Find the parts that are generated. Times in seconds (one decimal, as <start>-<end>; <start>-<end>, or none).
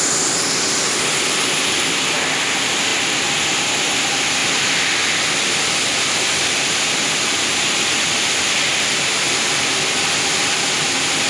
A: 4.4-4.9